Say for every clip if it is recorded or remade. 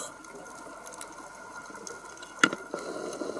recorded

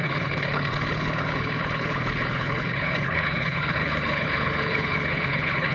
remade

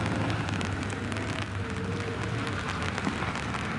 recorded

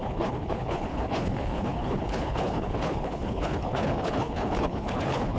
remade